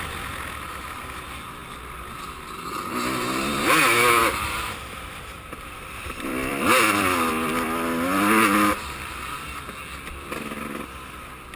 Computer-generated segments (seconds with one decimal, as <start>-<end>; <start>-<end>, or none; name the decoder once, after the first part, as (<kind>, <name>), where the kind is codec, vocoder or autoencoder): 4.2-7.3 (vocoder, BigVGAN v2)